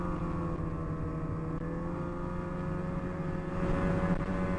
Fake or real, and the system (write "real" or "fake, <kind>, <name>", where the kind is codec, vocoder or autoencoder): real